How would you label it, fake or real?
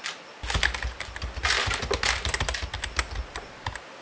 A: real